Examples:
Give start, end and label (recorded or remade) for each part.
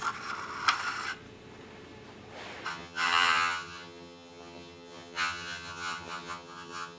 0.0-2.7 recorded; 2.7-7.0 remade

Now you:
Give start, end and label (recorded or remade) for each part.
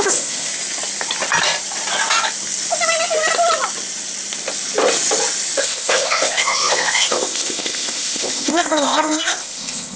0.0-0.5 remade; 0.5-5.6 recorded; 5.6-10.0 remade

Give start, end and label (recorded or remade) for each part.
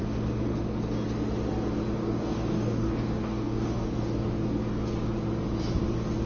0.0-2.0 recorded; 2.0-4.6 remade; 4.6-6.3 recorded